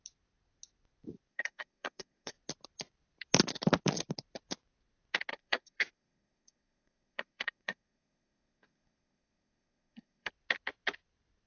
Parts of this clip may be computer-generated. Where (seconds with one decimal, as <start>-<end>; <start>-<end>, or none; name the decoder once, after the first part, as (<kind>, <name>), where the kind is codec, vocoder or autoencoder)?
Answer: 1.3-2.3 (codec, SNAC); 5.3-10.3